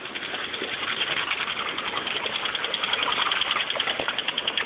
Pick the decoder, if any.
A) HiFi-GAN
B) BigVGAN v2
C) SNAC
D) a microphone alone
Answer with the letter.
D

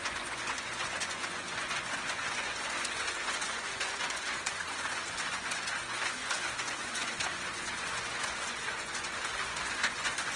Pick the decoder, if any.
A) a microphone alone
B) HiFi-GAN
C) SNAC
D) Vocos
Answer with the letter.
D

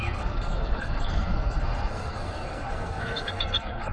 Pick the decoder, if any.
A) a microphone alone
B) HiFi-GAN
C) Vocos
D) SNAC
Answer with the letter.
D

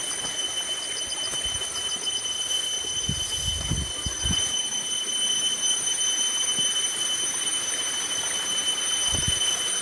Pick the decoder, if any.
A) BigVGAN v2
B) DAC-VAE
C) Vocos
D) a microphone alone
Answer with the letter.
D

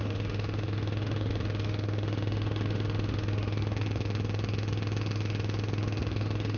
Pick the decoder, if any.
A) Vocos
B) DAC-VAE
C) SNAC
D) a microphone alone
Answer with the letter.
B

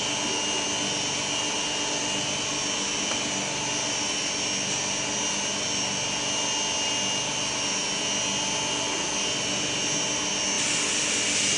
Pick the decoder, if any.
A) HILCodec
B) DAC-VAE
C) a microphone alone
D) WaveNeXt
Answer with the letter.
C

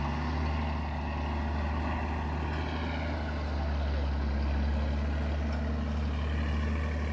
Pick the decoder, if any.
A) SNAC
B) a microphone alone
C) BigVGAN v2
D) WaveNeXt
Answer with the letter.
B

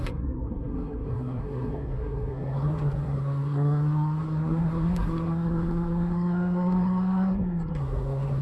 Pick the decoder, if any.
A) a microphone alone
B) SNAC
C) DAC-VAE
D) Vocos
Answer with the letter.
B